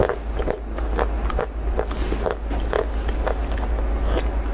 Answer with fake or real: real